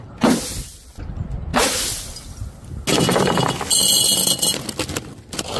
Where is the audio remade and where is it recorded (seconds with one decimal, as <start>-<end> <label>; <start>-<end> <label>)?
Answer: 0.0-5.6 recorded